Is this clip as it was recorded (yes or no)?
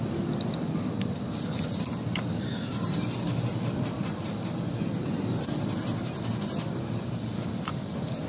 yes